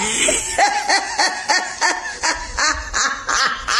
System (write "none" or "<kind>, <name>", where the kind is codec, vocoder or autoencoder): none